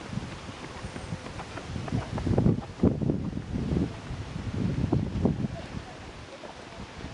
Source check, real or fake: real